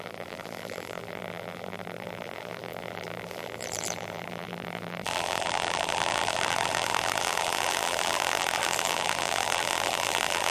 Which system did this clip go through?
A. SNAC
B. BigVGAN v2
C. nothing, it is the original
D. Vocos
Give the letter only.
B